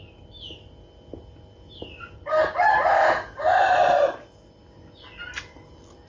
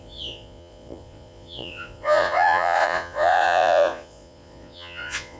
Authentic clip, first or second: first